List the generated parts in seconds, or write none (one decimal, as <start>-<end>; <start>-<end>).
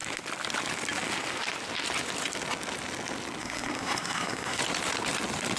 3.4-4.6